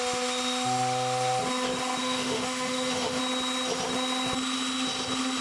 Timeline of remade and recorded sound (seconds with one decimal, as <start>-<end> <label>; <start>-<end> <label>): 0.0-2.0 recorded; 2.0-3.2 remade; 3.2-5.4 recorded